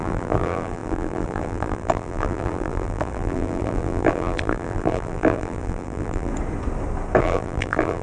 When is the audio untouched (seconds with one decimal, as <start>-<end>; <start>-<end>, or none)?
6.3-7.2

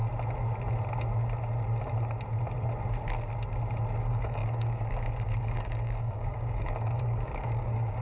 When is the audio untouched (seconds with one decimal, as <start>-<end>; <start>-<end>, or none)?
0.0-4.0

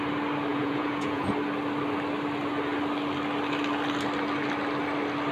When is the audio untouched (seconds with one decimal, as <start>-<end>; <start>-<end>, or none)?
0.0-0.5; 1.3-5.3

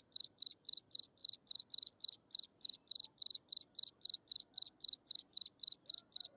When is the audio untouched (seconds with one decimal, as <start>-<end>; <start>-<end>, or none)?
0.0-6.4

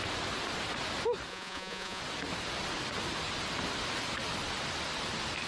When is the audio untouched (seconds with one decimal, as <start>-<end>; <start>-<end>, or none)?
0.0-1.3; 2.0-5.5